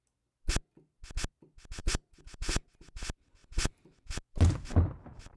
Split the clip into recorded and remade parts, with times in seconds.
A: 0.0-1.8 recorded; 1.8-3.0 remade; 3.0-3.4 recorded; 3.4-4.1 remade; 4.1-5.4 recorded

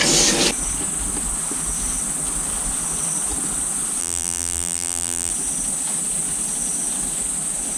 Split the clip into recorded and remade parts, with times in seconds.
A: 0.0-4.0 recorded; 4.0-5.3 remade; 5.3-7.8 recorded

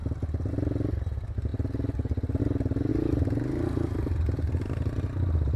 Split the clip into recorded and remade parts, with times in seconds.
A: 0.0-2.9 recorded; 2.9-4.8 remade; 4.8-5.6 recorded

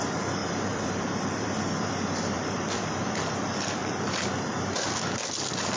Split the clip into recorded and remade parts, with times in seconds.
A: 0.0-3.8 remade; 3.8-5.1 recorded; 5.1-5.8 remade

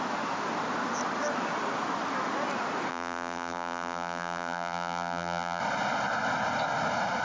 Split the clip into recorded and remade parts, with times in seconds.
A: 0.0-2.9 recorded; 2.9-5.6 remade; 5.6-7.2 recorded

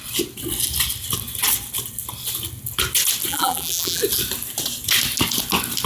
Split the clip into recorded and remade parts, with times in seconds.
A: 0.0-3.3 recorded; 3.3-4.0 remade; 4.0-5.9 recorded